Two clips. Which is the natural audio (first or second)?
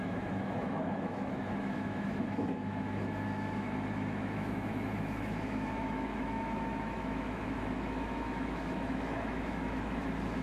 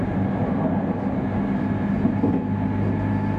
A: second